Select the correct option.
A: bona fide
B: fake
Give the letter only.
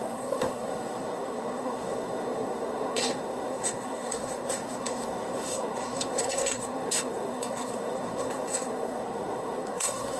B